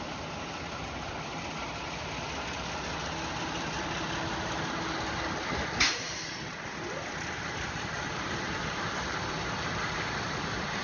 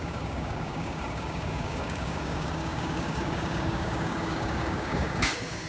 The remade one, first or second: second